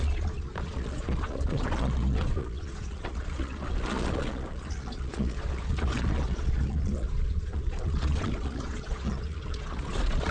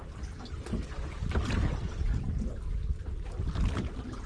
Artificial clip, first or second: first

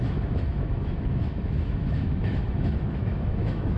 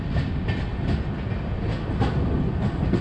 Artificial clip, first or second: first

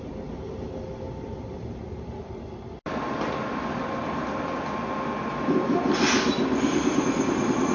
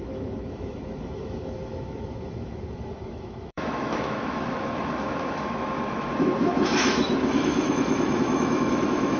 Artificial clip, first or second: second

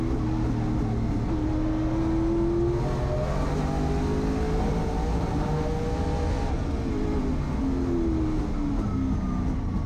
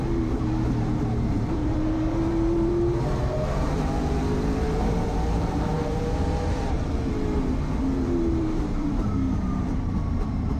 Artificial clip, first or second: second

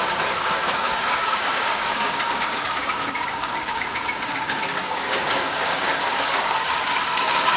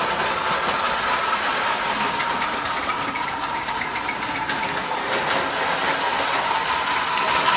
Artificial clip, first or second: first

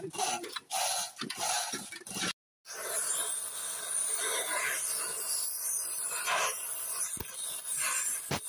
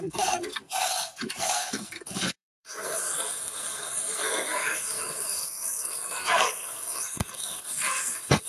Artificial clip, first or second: second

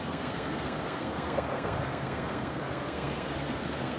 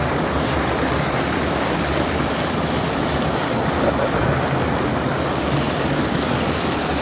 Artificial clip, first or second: first